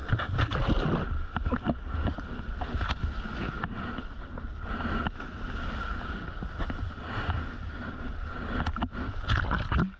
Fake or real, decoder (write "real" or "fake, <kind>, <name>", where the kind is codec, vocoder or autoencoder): real